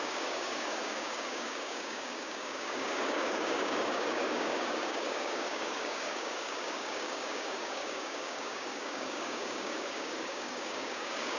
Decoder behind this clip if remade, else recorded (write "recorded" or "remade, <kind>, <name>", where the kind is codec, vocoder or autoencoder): remade, codec, DAC